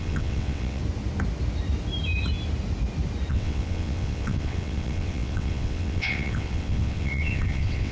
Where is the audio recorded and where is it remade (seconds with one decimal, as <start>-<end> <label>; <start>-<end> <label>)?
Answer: 0.0-0.8 remade; 0.8-3.3 recorded; 3.3-7.9 remade